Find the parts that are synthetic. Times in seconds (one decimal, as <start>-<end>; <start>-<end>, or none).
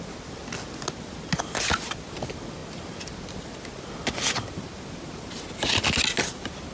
none